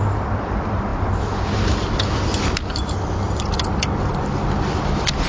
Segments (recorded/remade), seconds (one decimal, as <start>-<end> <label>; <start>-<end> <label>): 0.0-5.3 recorded